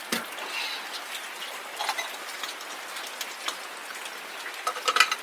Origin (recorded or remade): recorded